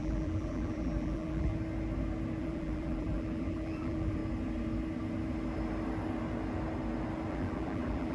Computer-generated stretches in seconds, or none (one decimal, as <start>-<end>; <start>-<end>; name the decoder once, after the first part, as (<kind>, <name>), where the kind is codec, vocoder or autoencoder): 0.0-1.5 (vocoder, BigVGAN v2); 2.4-4.2; 7.3-8.1